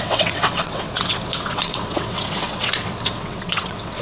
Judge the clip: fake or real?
fake